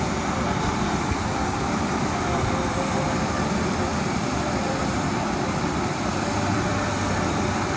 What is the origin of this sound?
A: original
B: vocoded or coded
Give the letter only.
B